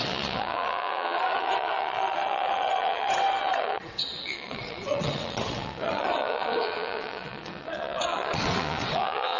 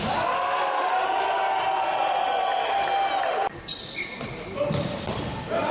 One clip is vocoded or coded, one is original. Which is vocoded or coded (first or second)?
first